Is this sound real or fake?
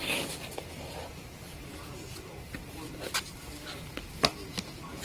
real